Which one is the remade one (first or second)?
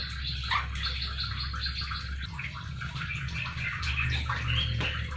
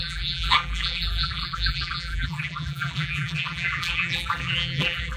second